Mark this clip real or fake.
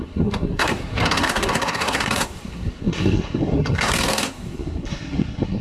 fake